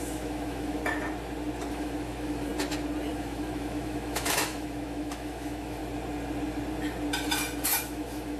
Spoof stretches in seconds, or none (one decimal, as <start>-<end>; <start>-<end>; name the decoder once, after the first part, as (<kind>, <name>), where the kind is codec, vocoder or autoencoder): 0.0-0.8 (autoencoder, DAC-VAE); 1.7-2.5; 3.1-5.8; 7.8-8.4